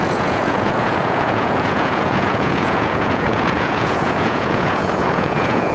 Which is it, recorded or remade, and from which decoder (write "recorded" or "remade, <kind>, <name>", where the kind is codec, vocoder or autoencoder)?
remade, vocoder, Vocos